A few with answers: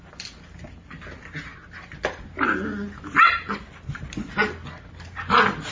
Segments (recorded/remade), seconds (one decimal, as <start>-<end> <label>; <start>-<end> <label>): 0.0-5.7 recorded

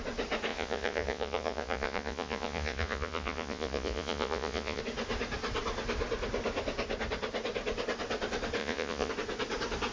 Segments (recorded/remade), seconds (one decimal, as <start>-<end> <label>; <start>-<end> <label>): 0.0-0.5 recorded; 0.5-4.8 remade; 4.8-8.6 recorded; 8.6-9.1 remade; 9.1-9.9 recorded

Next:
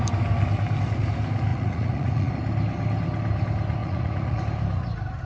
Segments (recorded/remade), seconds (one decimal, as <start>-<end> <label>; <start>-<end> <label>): 0.0-1.5 recorded; 1.5-2.3 remade; 2.3-3.8 recorded; 3.8-4.4 remade; 4.4-5.3 recorded

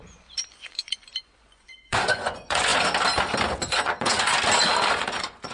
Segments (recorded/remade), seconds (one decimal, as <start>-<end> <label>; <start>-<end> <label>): 0.0-2.7 remade; 2.7-3.5 recorded; 3.5-4.3 remade; 4.3-5.0 recorded; 5.0-5.5 remade

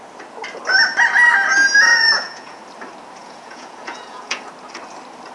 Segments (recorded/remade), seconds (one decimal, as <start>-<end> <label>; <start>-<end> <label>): 0.0-1.9 recorded; 1.9-2.6 remade; 2.6-3.2 recorded; 3.2-4.5 remade; 4.5-5.3 recorded

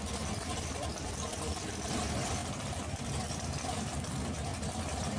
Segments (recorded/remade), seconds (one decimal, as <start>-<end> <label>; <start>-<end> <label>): 0.0-5.2 recorded